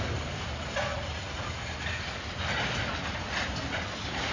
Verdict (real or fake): real